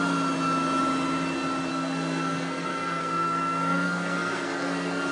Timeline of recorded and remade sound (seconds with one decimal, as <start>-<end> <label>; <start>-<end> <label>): 0.0-1.7 recorded; 1.7-5.1 remade